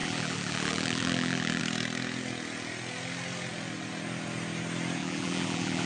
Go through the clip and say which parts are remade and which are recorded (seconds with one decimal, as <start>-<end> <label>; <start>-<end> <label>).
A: 0.0-1.6 remade; 1.6-5.0 recorded; 5.0-5.9 remade